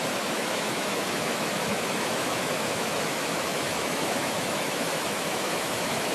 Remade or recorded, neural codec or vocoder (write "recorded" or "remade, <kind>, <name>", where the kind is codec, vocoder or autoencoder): remade, autoencoder, DAC-VAE